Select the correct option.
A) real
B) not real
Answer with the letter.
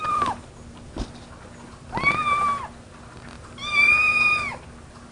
A